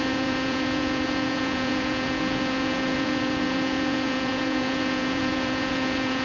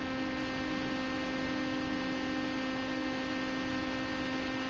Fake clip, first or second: first